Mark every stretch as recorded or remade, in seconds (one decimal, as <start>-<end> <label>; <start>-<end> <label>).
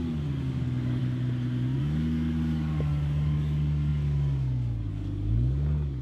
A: 0.0-1.0 remade; 1.0-1.8 recorded; 1.8-6.0 remade